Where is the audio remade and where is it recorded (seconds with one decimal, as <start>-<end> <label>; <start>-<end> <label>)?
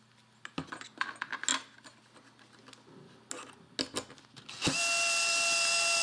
0.0-6.0 recorded